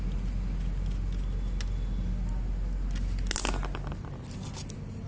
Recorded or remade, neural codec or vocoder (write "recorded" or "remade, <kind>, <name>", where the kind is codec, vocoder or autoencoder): recorded